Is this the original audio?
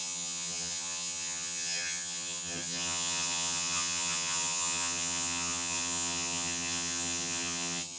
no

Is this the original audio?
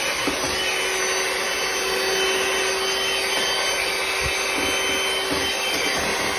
yes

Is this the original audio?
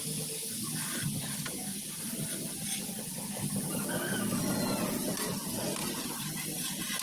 yes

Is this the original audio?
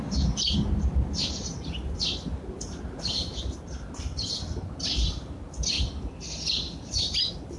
yes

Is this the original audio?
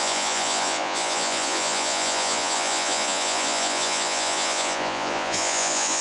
no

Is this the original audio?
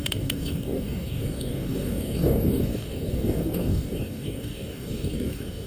no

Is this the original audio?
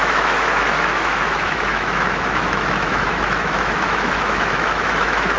no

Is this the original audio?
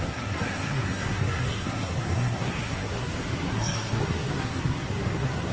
no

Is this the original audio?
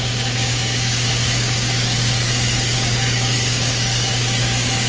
no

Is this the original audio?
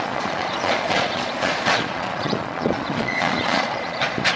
no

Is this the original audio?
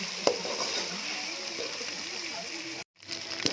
no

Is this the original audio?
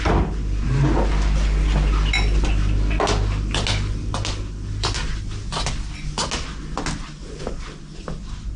yes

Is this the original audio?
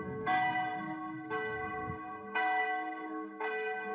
no